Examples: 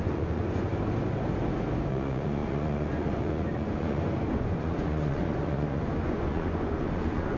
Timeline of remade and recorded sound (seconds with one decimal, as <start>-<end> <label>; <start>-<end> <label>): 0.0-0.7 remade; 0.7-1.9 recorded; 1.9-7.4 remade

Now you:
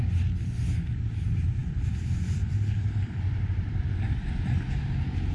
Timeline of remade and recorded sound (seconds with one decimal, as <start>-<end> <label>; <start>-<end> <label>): 0.0-1.6 recorded; 1.6-4.8 remade; 4.8-5.3 recorded

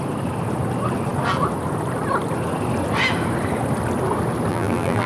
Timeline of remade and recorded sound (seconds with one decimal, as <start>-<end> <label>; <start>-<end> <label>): 0.0-4.5 recorded; 4.5-5.1 remade

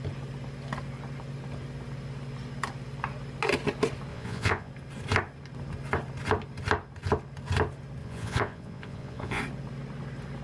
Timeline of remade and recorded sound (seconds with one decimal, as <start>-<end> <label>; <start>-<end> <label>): 0.0-4.1 recorded; 4.1-4.7 remade; 4.7-8.0 recorded; 8.0-9.4 remade; 9.4-10.4 recorded

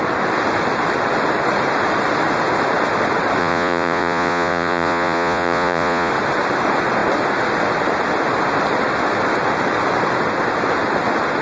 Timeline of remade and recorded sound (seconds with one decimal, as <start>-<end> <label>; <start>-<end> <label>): 0.0-3.4 recorded; 3.4-6.1 remade; 6.1-11.4 recorded

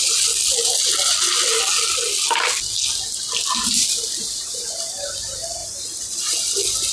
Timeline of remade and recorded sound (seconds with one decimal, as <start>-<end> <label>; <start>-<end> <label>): 0.0-1.5 remade; 1.5-3.6 recorded; 3.6-6.9 remade